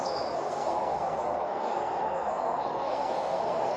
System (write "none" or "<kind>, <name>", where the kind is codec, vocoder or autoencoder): codec, SNAC